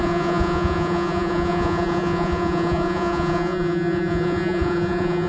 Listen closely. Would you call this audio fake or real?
fake